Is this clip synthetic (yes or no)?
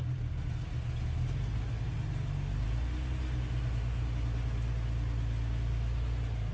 no